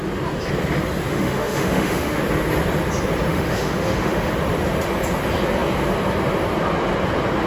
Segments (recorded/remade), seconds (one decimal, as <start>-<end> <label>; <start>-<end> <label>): 0.0-1.1 recorded; 1.1-2.2 remade; 2.2-3.3 recorded; 3.3-4.3 remade; 4.3-7.5 recorded